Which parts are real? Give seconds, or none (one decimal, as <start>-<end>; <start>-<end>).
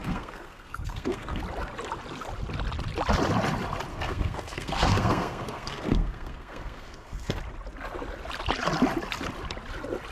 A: 1.4-3.9; 7.4-10.1